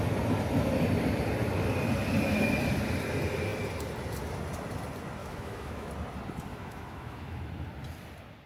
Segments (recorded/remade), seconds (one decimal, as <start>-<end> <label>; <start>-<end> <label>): 0.0-5.2 recorded; 5.2-5.9 remade; 5.9-6.5 recorded; 6.5-7.4 remade; 7.4-8.5 recorded